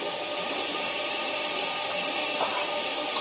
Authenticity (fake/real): real